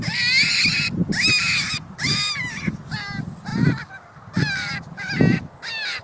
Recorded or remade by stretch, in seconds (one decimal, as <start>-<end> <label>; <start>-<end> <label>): 0.0-3.5 recorded; 3.5-4.7 remade; 4.7-6.0 recorded